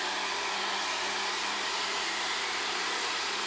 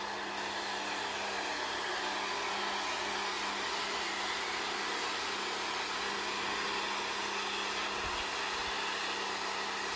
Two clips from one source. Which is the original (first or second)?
second